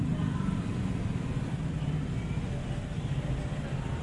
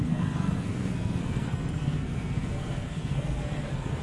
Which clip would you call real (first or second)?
first